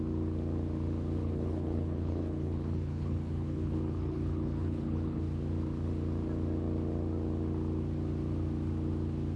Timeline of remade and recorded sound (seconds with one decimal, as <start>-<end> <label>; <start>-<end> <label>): 0.0-1.2 recorded; 1.2-5.2 remade; 5.2-9.4 recorded